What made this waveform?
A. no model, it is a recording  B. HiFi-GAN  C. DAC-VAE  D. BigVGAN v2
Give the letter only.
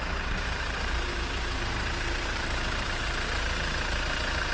D